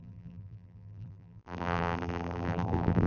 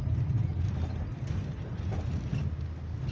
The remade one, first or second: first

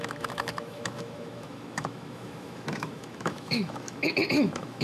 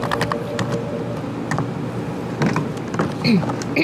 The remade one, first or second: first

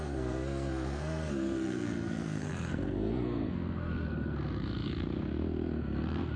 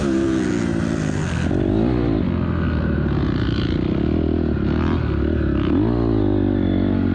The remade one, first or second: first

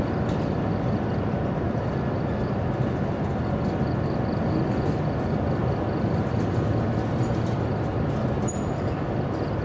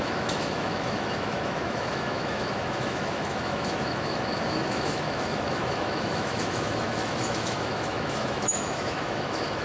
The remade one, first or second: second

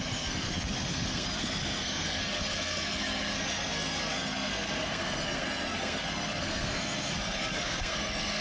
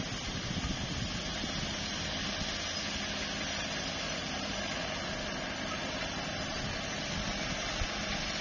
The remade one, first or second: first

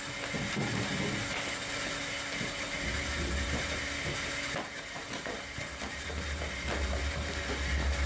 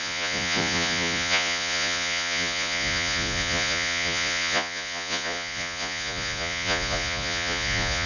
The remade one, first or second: second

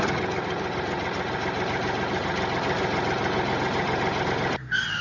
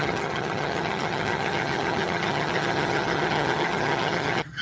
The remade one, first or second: second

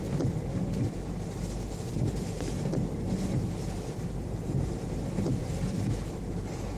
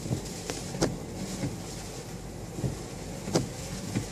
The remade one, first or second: first